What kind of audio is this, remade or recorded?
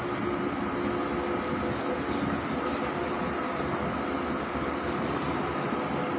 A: recorded